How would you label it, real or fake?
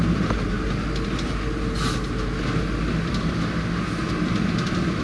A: real